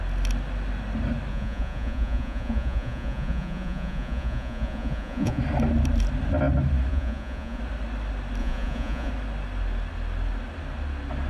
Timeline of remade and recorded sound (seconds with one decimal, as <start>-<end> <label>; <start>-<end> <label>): 0.0-1.3 recorded; 1.3-5.4 remade; 5.4-6.9 recorded; 6.9-7.6 remade; 7.6-8.4 recorded; 8.4-9.1 remade; 9.1-11.3 recorded